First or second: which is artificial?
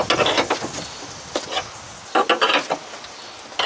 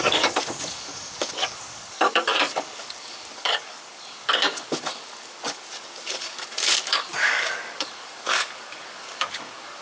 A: second